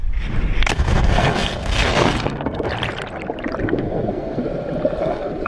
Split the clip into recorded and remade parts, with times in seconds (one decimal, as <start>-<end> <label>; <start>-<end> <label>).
0.0-0.7 recorded; 0.7-2.7 remade; 2.7-3.6 recorded; 3.6-4.4 remade; 4.4-5.0 recorded; 5.0-5.5 remade